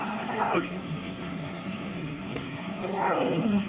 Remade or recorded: remade